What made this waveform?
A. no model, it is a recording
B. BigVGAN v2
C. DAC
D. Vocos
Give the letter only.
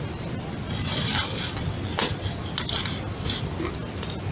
A